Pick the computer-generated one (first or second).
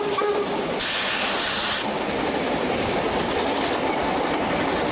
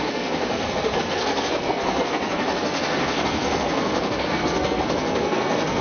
second